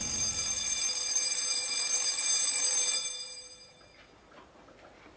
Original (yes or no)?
no